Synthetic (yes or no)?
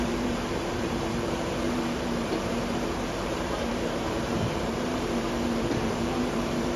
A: yes